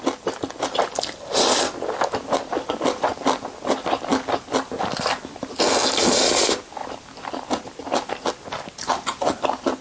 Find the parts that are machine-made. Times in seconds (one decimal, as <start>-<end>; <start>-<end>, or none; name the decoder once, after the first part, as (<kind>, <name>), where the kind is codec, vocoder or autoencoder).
none

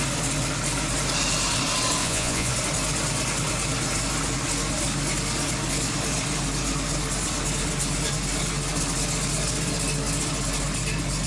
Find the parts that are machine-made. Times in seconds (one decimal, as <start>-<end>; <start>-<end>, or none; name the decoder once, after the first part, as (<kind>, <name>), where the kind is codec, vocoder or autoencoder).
2.0-2.5 (vocoder, Vocos)